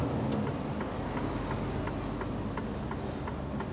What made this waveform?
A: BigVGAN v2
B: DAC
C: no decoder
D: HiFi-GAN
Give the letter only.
C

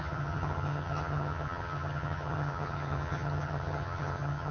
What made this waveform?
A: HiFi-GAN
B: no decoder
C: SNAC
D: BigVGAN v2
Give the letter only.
A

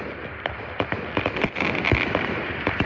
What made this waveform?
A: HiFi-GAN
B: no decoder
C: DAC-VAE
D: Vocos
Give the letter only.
B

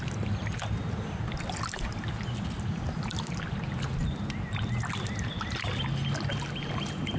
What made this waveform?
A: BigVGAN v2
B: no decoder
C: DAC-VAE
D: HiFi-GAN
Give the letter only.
B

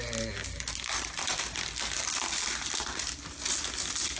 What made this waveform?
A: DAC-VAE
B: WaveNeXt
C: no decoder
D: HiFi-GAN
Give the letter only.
C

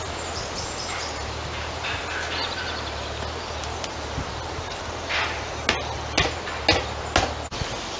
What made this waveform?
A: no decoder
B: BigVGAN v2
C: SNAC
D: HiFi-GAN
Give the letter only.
A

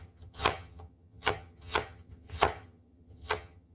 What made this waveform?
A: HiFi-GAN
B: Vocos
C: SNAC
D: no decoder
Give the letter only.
A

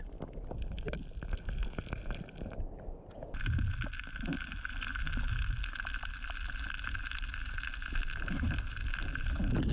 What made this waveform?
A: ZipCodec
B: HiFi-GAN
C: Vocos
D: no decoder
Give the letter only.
D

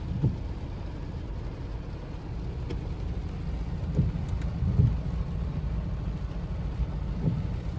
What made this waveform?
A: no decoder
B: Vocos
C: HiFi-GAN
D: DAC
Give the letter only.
A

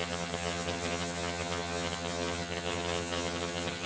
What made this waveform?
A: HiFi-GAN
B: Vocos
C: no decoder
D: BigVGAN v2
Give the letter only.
A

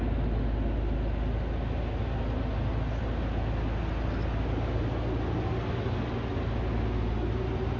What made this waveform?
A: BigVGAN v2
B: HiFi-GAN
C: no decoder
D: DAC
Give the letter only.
C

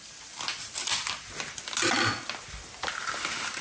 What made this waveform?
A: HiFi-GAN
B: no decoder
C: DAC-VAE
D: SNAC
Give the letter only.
B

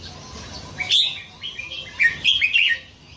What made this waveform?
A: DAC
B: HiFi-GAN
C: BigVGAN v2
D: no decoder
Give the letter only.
D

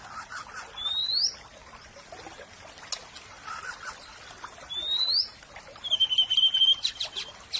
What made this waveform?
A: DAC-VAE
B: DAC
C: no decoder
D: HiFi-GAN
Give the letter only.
C